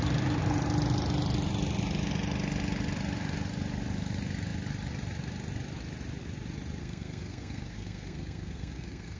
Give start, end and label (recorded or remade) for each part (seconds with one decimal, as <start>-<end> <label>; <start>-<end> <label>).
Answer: 0.0-6.8 recorded; 6.8-9.2 remade